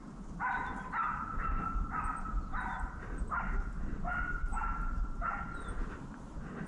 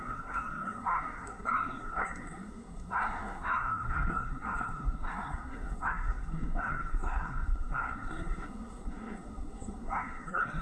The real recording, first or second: first